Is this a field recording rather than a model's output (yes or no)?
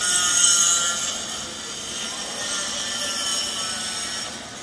yes